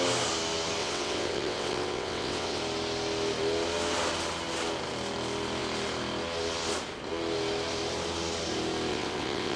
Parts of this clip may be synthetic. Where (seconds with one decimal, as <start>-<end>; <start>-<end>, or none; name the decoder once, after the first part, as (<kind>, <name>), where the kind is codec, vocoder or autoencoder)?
0.8-2.6 (vocoder, WaveNeXt); 8.9-9.6